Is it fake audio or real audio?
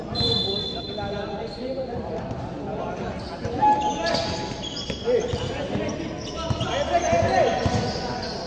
real